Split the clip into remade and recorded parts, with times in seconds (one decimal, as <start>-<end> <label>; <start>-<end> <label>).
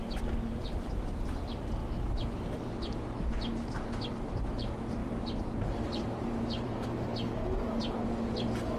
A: 0.0-0.6 recorded; 0.6-1.8 remade; 1.8-4.5 recorded; 4.5-5.0 remade; 5.0-5.7 recorded; 5.7-7.1 remade; 7.1-8.3 recorded; 8.3-8.8 remade